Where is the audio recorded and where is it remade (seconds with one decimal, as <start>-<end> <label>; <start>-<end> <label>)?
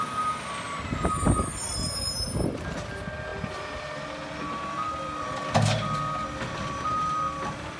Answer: 0.0-7.8 recorded